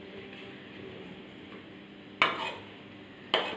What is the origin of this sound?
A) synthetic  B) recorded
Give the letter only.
B